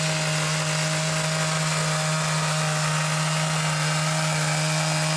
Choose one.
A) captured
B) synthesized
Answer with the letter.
A